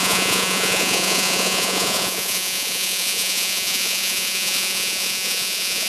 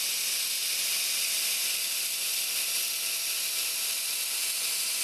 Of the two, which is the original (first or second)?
second